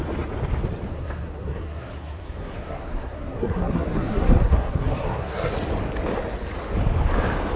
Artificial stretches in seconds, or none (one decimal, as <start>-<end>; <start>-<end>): 0.9-5.5